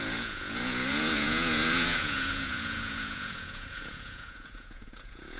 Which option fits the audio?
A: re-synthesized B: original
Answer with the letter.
A